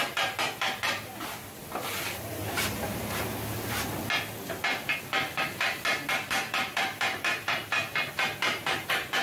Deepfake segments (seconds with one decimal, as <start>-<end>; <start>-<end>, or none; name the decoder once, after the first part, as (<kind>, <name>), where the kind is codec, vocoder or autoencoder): 0.0-1.6 (vocoder, BigVGAN v2); 2.3-2.9; 6.1-7.6; 8.4-9.2

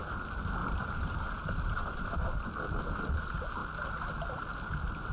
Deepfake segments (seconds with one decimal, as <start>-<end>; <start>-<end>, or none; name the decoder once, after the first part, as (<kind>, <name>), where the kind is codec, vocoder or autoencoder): 0.6-2.2 (vocoder, BigVGAN v2)

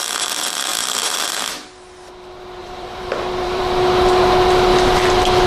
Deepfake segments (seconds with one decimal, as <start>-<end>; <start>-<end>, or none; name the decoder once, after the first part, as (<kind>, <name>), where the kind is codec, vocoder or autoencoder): 0.7-1.2 (vocoder, BigVGAN v2); 2.6-3.6

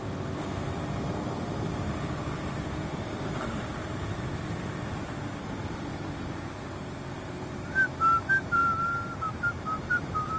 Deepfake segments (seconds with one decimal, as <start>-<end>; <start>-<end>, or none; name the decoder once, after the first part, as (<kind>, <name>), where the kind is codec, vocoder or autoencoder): 0.0-8.6 (vocoder, BigVGAN v2); 9.2-10.4